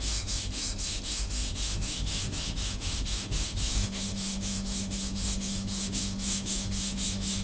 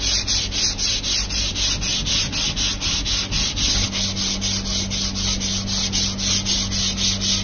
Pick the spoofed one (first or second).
first